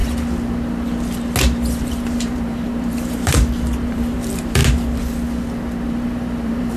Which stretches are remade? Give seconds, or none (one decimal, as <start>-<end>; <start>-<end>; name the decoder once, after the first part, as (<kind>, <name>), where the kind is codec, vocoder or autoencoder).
1.8-3.3 (vocoder, BigVGAN v2); 3.8-4.6; 5.9-6.8